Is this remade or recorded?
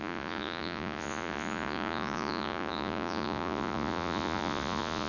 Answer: remade